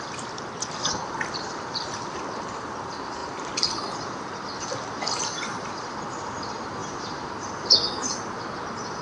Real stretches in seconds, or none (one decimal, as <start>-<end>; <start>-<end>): 0.0-6.8; 7.5-9.0